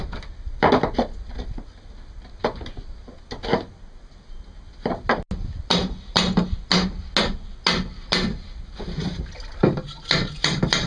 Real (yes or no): yes